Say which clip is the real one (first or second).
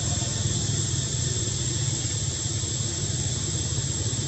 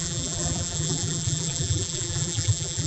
first